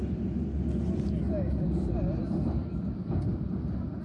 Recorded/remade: recorded